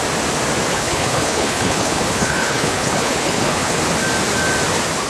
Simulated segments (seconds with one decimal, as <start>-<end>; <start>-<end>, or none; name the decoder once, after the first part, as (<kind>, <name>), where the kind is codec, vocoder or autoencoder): 0.7-3.8 (codec, HILCodec)